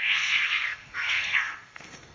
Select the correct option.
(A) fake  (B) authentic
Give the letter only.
A